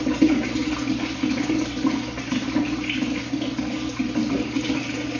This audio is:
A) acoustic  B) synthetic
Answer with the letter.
A